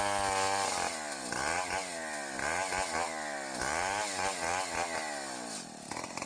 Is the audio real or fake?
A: real